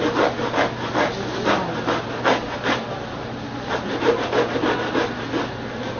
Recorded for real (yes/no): yes